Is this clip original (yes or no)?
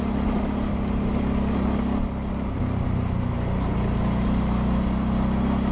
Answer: yes